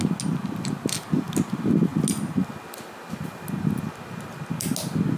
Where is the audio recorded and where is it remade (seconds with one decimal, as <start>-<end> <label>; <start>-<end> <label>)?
0.0-5.2 recorded